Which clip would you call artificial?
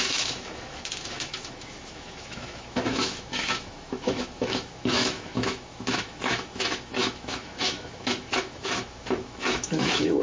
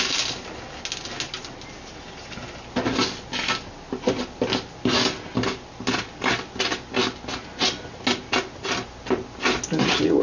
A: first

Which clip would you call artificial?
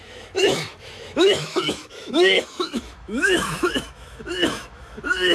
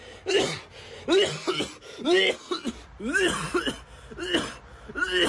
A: first